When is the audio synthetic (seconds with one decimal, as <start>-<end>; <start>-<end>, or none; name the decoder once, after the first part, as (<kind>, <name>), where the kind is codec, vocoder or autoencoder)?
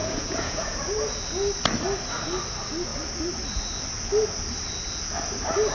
0.0-0.8 (vocoder, Vocos)